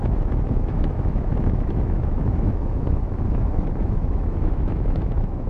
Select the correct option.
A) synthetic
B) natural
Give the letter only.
A